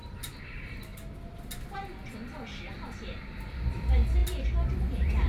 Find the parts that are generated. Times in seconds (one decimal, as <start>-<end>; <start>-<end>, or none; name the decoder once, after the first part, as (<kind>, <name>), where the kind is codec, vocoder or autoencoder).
0.0-0.9 (vocoder, BigVGAN v2); 3.7-4.2